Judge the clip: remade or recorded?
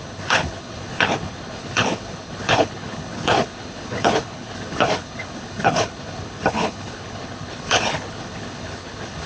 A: remade